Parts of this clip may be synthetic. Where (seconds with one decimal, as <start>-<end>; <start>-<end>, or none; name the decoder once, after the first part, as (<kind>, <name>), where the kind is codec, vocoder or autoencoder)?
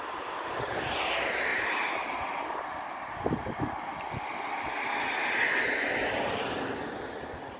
none